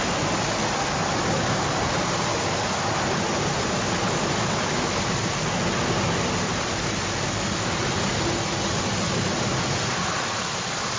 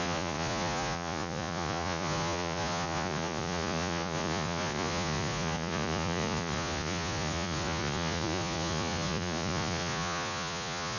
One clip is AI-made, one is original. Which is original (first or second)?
first